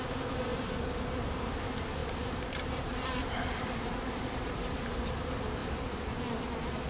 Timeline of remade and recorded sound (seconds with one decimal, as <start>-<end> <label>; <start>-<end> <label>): 0.0-2.0 recorded; 2.0-4.9 remade; 4.9-5.6 recorded; 5.6-6.2 remade; 6.2-6.9 recorded